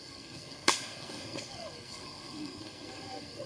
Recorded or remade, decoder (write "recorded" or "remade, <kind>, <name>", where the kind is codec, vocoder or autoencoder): remade, codec, SNAC